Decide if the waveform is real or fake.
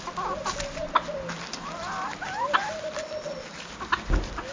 real